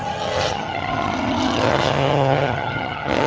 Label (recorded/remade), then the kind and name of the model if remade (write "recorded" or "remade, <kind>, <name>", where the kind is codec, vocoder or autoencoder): remade, vocoder, HiFi-GAN